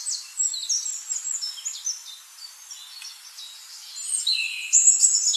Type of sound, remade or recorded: recorded